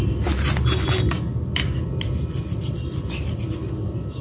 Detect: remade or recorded recorded